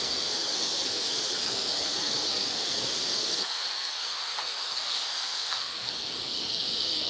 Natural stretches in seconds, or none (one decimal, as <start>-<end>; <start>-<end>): none